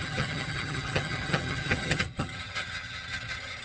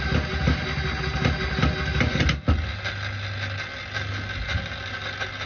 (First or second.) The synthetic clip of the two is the first